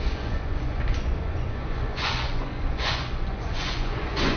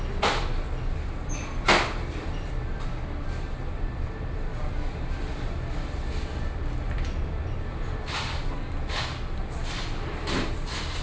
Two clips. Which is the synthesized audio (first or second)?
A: first